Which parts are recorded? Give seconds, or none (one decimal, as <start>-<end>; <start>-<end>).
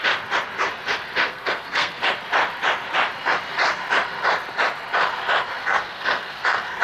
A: 0.0-1.3; 2.0-5.6